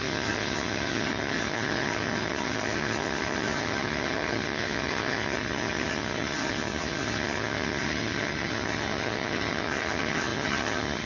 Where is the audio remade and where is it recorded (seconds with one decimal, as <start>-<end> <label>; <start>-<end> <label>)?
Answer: 0.0-11.1 remade